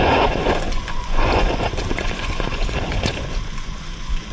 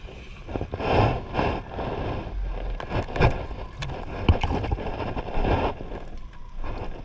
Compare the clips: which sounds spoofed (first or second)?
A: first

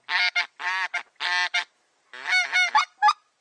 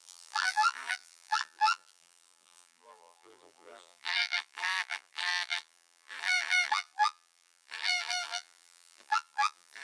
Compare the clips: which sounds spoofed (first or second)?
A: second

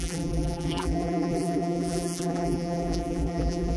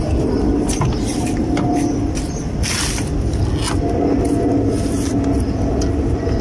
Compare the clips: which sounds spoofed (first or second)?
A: first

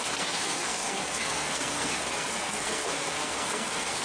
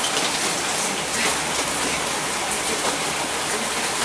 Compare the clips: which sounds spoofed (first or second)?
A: first